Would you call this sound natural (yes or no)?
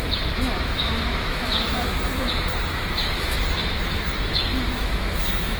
no